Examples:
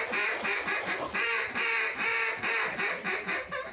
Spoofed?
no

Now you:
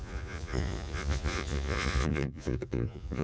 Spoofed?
yes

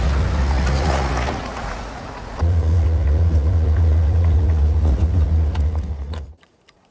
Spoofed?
yes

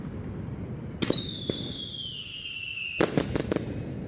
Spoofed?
no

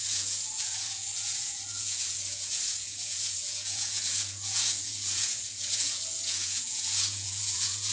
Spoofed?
yes